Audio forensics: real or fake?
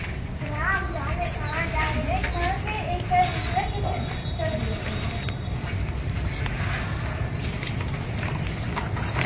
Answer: real